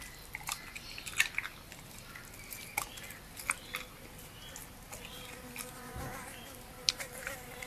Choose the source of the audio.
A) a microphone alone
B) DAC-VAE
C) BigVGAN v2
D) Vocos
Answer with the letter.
A